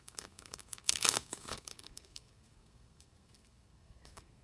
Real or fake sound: fake